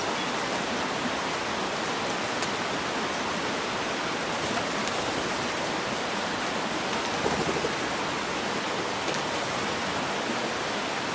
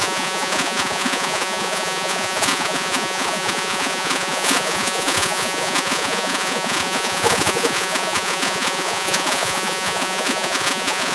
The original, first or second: first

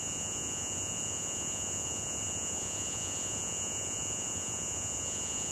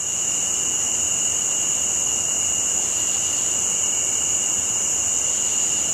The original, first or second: second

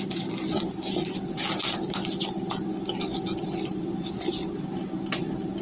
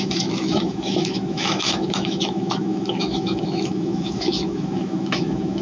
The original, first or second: first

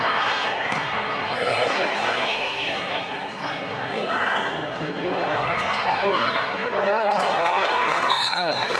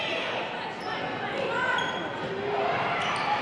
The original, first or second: second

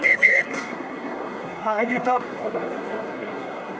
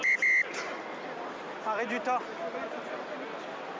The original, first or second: second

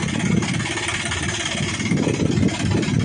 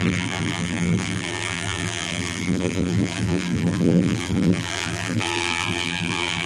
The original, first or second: first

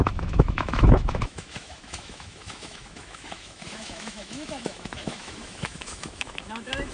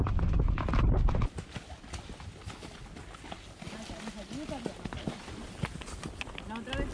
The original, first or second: second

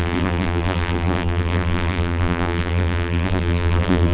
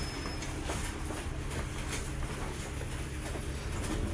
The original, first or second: second